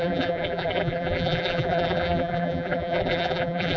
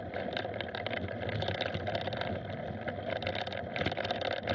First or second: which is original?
second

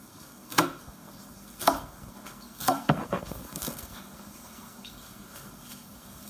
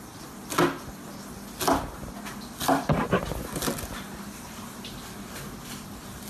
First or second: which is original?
second